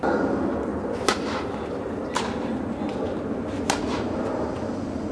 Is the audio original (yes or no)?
yes